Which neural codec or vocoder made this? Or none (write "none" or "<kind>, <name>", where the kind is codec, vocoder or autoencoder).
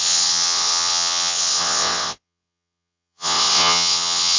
vocoder, WaveNeXt